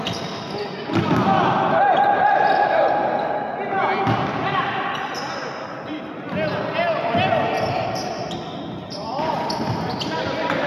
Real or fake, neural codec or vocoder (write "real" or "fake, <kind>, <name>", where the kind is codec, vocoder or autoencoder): real